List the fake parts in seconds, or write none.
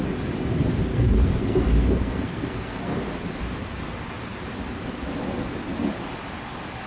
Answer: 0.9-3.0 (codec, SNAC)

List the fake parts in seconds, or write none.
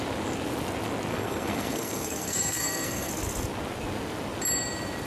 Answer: 1.1-3.1 (codec, SNAC)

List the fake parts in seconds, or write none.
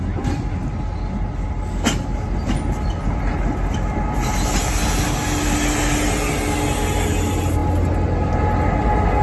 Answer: none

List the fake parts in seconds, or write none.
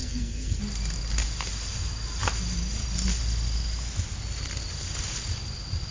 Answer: 0.0-0.6 (codec, SNAC)